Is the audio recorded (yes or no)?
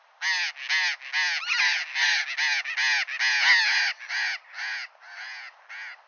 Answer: yes